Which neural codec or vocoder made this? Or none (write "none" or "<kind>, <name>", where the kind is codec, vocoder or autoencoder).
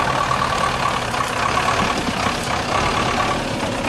none